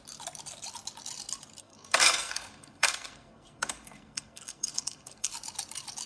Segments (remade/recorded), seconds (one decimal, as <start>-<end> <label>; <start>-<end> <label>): 0.0-1.6 recorded; 1.6-5.3 remade; 5.3-6.1 recorded